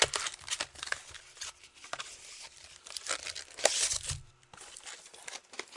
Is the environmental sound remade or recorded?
recorded